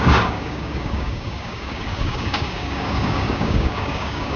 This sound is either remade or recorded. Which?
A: remade